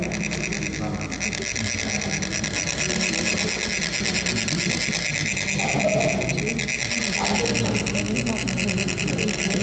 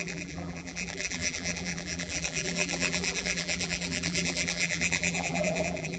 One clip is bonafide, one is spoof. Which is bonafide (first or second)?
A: first